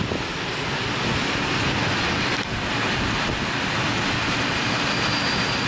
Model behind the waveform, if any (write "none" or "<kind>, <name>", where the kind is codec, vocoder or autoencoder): none